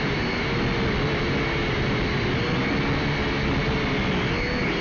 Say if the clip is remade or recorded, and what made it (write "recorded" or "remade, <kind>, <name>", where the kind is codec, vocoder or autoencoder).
recorded